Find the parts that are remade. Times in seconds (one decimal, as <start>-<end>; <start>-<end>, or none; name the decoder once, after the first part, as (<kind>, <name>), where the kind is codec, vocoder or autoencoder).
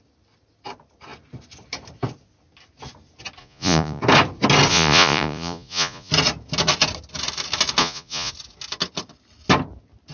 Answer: 3.4-4.0 (vocoder, Vocos); 4.7-6.1; 7.8-8.3